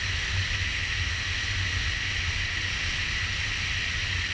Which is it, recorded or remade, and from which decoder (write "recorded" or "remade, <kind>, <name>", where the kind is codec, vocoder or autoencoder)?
recorded